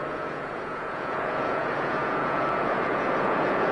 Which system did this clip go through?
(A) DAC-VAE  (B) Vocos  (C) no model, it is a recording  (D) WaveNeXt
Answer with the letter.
B